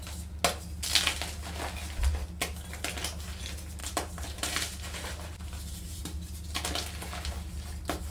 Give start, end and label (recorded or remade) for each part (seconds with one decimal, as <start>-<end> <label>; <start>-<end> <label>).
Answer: 0.0-3.8 recorded; 3.8-6.0 remade; 6.0-8.1 recorded